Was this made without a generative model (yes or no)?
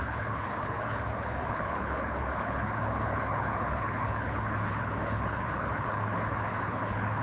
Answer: no